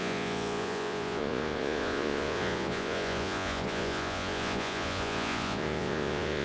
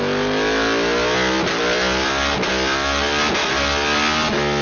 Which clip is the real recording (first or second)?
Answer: second